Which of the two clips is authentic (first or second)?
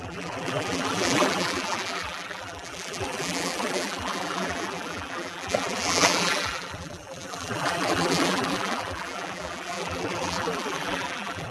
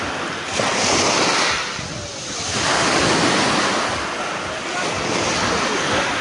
second